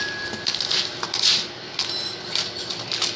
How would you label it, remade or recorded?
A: recorded